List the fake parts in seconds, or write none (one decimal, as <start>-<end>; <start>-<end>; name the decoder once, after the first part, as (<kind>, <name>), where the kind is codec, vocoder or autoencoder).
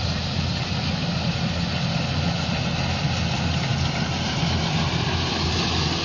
none